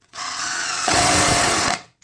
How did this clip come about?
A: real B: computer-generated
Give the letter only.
B